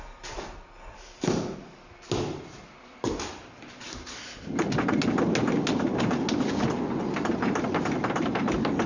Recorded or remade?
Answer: recorded